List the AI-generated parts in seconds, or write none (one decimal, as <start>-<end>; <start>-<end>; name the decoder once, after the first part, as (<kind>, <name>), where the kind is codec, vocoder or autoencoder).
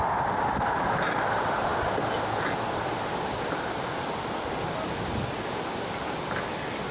none